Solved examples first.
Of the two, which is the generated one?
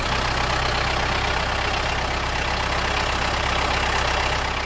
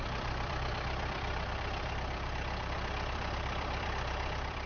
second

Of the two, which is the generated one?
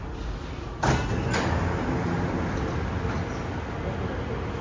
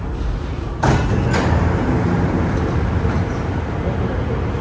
second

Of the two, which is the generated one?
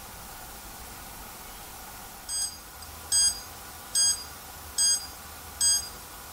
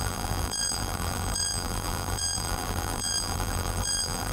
second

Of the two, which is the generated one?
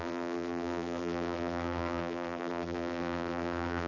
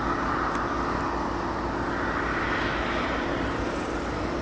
first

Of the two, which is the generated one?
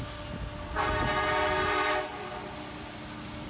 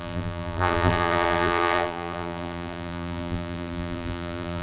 second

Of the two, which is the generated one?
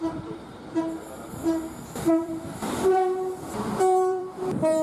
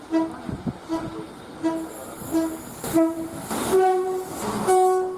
first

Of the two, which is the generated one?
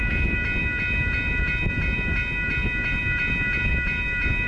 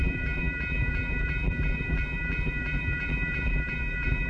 second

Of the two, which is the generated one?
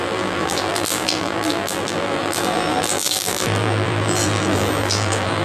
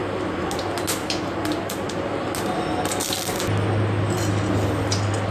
first